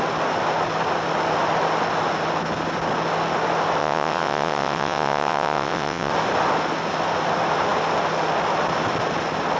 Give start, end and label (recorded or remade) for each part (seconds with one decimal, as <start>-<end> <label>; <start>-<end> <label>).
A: 0.0-3.8 recorded; 3.8-6.1 remade; 6.1-9.6 recorded